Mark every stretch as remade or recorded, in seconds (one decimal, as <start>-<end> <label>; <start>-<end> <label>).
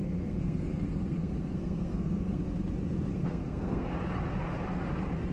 0.0-2.4 remade; 2.4-3.1 recorded; 3.1-3.9 remade; 3.9-5.3 recorded